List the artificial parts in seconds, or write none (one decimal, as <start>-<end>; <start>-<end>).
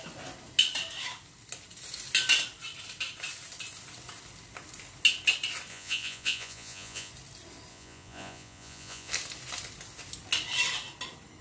5.7-7.1; 7.7-9.1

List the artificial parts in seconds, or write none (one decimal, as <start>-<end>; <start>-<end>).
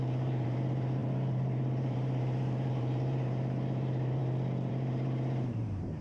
0.0-4.2; 4.7-6.0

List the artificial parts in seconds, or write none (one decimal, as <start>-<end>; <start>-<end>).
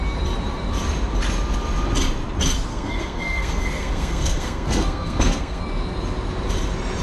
2.7-5.6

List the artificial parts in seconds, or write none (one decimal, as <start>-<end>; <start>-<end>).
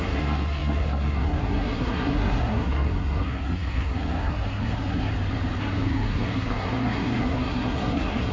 0.0-5.1; 5.6-8.3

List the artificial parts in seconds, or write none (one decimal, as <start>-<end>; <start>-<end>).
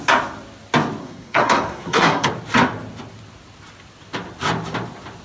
1.0-2.3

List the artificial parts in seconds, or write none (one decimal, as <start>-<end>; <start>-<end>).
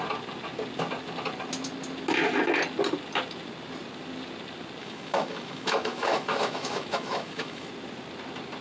4.8-7.7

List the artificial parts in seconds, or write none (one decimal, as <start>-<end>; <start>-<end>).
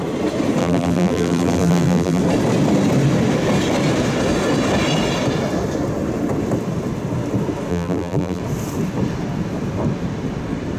0.6-2.2; 7.7-8.4